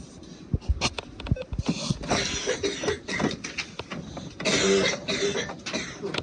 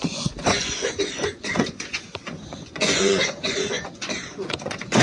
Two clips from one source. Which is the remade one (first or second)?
second